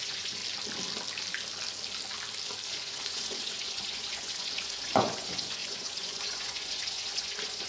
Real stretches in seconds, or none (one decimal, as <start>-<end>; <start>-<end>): 0.4-2.7

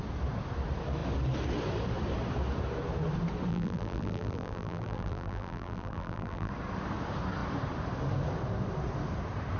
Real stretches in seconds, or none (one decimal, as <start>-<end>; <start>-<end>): 0.0-3.5; 6.5-9.6

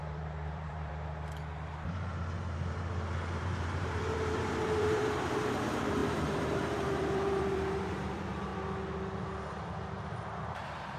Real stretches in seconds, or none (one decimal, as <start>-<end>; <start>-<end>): 0.9-1.7; 8.5-10.1

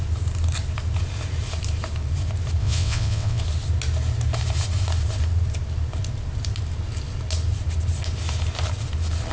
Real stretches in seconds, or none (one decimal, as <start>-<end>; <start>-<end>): 0.0-2.6; 3.4-9.3